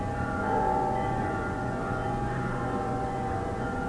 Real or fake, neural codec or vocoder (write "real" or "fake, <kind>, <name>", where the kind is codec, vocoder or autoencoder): fake, vocoder, Vocos